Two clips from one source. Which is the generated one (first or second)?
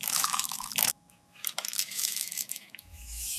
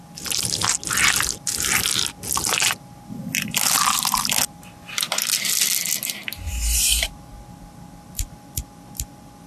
first